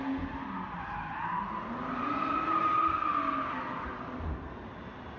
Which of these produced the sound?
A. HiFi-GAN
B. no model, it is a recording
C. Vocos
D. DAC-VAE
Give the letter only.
B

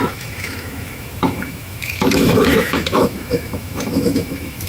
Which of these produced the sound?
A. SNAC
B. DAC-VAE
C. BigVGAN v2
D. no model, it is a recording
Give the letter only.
B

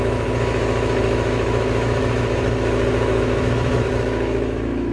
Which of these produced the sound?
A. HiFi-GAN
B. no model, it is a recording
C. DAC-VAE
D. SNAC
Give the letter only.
C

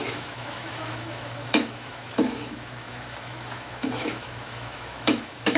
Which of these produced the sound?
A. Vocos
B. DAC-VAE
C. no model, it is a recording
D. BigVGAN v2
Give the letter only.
B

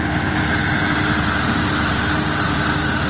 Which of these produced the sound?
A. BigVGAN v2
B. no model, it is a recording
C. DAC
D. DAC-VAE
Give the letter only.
B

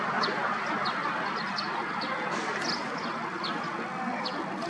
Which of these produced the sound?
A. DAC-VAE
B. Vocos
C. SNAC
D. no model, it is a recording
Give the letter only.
D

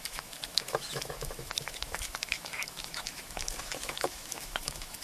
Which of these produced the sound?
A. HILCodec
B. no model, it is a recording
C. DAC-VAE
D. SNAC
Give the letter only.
C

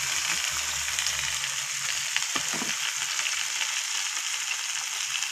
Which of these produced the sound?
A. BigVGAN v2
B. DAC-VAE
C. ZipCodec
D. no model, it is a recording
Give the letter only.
D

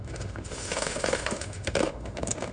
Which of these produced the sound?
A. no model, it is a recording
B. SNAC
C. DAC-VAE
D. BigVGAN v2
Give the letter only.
C